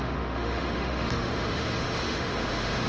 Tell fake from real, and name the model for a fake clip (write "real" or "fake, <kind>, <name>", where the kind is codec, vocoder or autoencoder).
fake, autoencoder, DAC-VAE